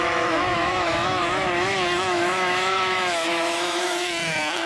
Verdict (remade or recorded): remade